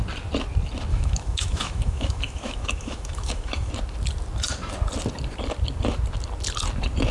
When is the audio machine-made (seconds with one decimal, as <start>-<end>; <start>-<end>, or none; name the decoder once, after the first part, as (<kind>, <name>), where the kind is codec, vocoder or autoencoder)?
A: 0.9-3.7 (autoencoder, DAC-VAE)